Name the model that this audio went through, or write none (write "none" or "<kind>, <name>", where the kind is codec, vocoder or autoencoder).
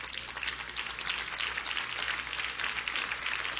none